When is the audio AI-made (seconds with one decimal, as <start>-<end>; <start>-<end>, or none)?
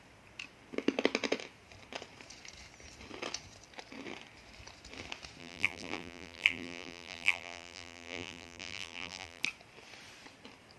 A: 5.4-9.4